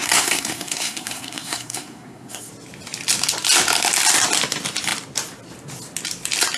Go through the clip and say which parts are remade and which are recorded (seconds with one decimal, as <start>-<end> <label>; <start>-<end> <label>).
0.0-2.5 remade; 2.5-6.6 recorded